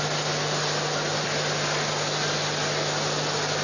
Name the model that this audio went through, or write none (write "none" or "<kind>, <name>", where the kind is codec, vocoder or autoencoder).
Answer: none